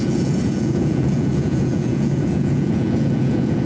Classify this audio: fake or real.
fake